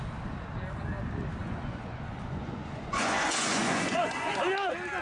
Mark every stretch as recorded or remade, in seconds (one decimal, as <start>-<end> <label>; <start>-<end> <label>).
0.0-1.4 recorded; 1.4-4.4 remade; 4.4-5.0 recorded